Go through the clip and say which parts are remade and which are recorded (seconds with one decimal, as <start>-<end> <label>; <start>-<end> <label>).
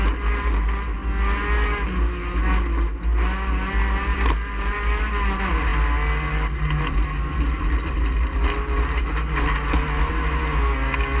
0.0-11.2 recorded